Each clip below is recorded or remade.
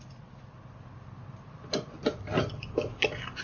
recorded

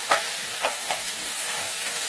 remade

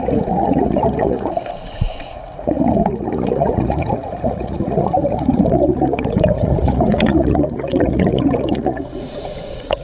remade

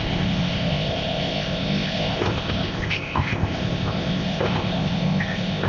remade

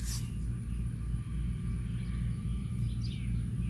recorded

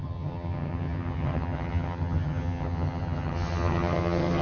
remade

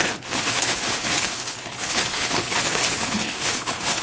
remade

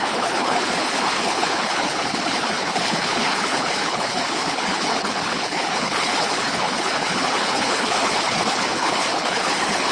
remade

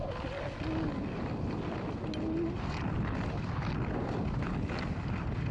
recorded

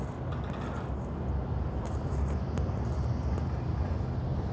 recorded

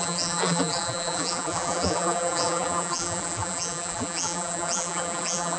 remade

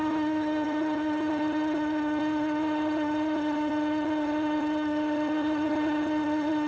remade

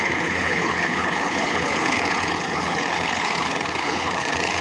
remade